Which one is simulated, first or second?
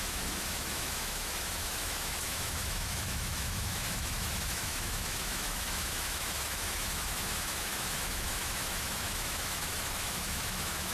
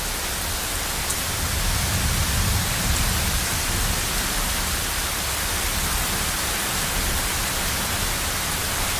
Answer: first